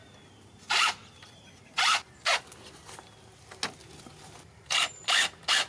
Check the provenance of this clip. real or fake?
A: real